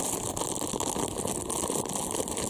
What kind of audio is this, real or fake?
real